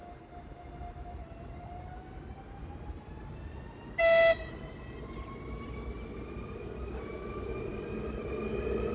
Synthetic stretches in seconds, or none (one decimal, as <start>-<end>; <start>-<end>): none